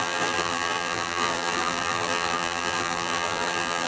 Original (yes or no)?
no